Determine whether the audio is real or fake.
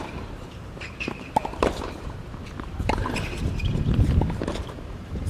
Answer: fake